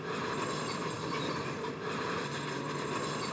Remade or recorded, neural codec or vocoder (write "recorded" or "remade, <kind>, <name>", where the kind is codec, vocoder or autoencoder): remade, vocoder, BigVGAN v2